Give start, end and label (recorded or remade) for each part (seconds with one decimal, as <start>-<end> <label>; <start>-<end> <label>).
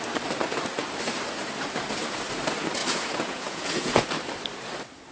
0.0-2.8 recorded; 2.8-4.1 remade; 4.1-5.1 recorded